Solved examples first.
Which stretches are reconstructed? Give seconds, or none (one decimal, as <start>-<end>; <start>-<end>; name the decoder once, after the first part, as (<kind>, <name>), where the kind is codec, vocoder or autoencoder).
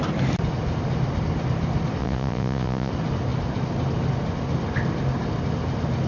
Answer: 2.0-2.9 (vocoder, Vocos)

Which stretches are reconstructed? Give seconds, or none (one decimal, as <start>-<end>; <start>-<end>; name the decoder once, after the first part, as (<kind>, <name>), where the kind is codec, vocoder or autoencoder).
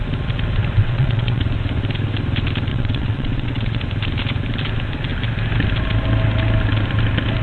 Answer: 0.8-1.4 (vocoder, WaveNeXt); 2.7-3.8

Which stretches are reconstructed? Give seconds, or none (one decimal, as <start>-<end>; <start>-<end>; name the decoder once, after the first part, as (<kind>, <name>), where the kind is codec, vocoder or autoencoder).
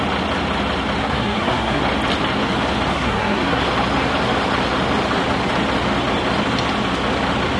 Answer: 1.0-1.8 (codec, SNAC); 2.9-3.6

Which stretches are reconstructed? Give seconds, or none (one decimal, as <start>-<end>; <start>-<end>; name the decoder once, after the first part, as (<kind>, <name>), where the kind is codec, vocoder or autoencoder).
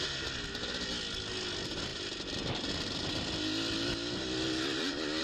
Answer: none